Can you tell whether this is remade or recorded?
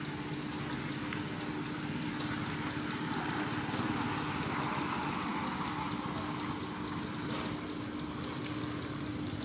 recorded